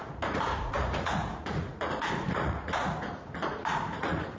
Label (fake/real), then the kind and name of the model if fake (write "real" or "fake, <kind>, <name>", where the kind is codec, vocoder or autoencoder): fake, vocoder, Vocos